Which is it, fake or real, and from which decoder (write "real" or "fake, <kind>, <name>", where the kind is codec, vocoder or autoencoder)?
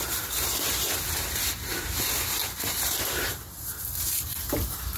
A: fake, vocoder, BigVGAN v2